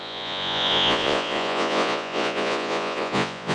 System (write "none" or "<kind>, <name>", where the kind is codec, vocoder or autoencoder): vocoder, Vocos